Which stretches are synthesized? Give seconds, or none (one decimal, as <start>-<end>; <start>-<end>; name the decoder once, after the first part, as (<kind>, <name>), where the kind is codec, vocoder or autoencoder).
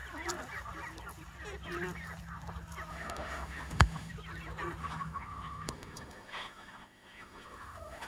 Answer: 2.9-4.1 (autoencoder, DAC-VAE); 4.8-8.1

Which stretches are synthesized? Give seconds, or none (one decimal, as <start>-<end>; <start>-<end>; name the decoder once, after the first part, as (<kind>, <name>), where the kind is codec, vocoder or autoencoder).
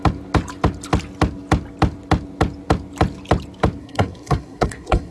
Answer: 3.8-5.1 (codec, SNAC)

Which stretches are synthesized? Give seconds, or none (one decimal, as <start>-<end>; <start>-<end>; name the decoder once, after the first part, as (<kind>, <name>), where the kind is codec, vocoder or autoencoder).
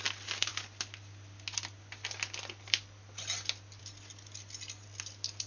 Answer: none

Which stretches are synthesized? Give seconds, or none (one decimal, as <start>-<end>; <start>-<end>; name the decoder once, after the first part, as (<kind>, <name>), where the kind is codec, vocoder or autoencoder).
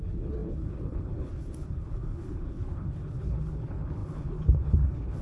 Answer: 0.0-5.2 (codec, HILCodec)